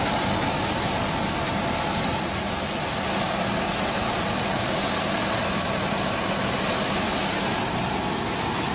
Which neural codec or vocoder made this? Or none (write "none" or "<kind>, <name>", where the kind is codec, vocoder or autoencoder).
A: none